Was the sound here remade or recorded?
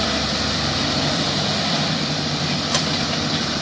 remade